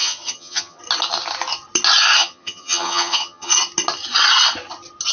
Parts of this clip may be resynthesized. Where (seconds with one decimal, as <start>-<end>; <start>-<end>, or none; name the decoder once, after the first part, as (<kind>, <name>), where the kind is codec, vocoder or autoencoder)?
0.0-0.8 (vocoder, HiFi-GAN); 2.2-3.5